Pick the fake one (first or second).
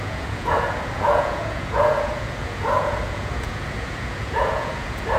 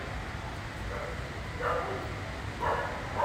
first